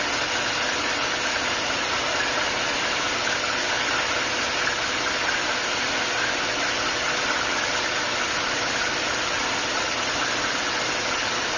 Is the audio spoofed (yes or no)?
no